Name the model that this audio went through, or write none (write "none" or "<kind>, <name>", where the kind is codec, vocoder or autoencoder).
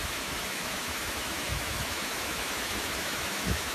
autoencoder, DAC-VAE